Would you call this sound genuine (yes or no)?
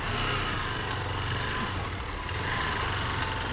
yes